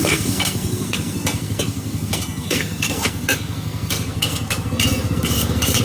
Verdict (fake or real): fake